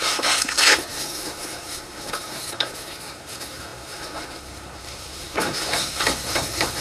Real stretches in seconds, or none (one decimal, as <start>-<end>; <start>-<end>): none